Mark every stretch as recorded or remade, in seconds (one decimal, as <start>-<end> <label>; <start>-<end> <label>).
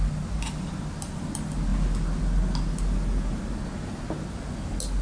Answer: 0.0-5.0 recorded